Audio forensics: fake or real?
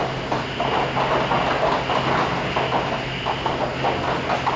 real